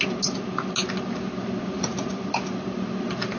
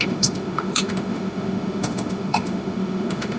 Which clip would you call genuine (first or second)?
first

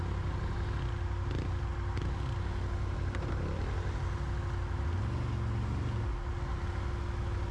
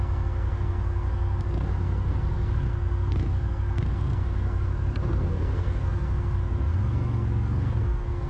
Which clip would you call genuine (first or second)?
first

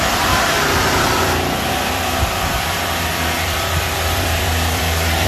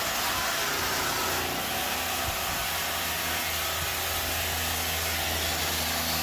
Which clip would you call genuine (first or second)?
second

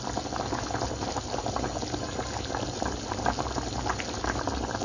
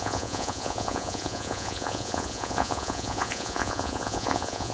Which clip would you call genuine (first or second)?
first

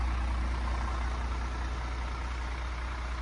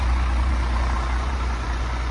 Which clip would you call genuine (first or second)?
first